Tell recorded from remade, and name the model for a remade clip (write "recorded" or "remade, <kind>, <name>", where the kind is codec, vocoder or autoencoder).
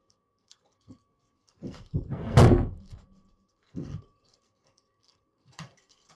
remade, codec, SNAC